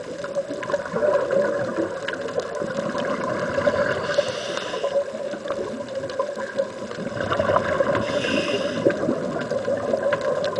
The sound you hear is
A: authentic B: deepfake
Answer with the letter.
A